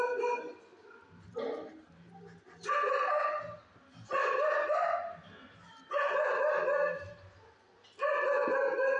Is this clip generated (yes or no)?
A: no